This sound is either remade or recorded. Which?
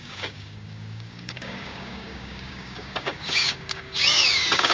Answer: remade